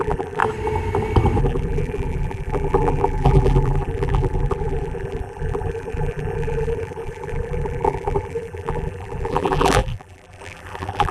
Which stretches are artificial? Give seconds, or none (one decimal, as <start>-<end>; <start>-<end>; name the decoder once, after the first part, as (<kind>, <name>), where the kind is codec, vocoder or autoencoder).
0.0-0.4 (vocoder, BigVGAN v2); 1.4-11.1